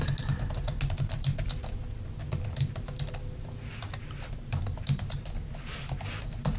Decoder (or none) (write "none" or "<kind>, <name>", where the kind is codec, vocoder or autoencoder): none